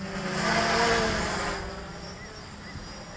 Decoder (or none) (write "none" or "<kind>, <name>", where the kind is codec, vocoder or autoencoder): none